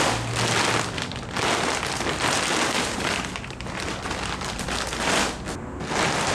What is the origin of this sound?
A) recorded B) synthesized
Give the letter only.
A